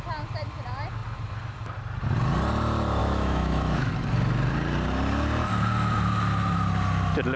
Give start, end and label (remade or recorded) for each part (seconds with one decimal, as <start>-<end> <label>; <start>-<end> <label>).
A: 0.0-3.0 recorded; 3.0-3.9 remade; 3.9-7.4 recorded